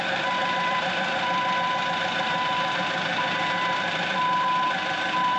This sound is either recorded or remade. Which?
remade